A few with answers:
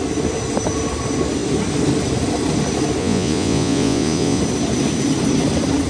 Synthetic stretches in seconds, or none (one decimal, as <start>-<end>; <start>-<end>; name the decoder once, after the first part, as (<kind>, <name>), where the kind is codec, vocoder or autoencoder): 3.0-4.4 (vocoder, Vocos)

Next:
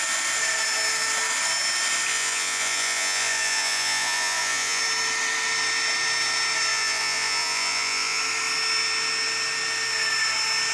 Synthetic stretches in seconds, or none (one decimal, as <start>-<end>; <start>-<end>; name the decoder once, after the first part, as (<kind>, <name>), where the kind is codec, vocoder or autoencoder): 2.1-4.8 (vocoder, Vocos); 6.7-8.2

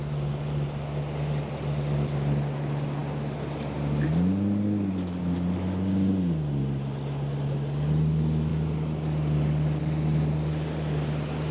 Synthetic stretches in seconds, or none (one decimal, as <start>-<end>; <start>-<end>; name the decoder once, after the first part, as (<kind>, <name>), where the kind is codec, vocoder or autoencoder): none

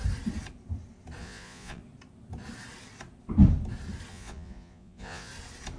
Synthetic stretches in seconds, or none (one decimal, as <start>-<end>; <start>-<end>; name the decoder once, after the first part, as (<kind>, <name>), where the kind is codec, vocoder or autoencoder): 1.2-1.8 (vocoder, Vocos); 4.1-5.3

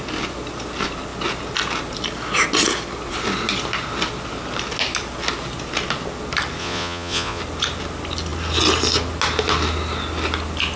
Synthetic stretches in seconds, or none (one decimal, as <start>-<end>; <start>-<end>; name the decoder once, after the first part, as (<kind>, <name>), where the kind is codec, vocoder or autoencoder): 6.6-7.4 (vocoder, Vocos)

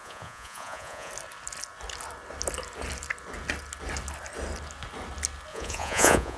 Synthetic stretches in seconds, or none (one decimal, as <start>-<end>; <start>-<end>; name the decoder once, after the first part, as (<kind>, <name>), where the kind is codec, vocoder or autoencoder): 0.0-1.1 (vocoder, Vocos); 5.5-6.4

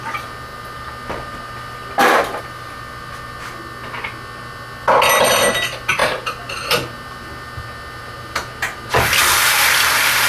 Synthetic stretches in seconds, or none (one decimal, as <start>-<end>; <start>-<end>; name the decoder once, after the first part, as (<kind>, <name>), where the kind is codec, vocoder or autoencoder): none